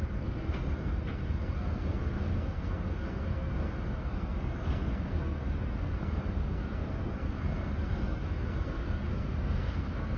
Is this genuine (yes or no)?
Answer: no